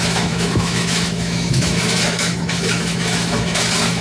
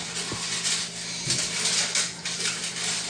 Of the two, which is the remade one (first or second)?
first